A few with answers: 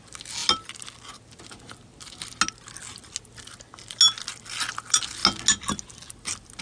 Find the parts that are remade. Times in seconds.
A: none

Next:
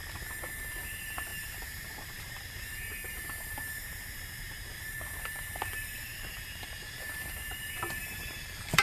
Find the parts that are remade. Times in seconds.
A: 0.7-8.8 (vocoder, BigVGAN v2)